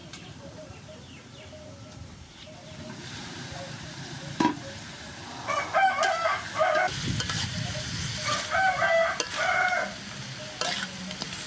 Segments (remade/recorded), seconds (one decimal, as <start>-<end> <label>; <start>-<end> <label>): 0.0-5.1 remade; 5.1-11.5 recorded